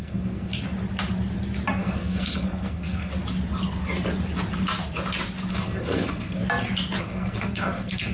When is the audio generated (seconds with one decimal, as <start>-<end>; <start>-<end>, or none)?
0.0-0.5; 1.7-3.1; 5.5-6.4; 7.0-8.1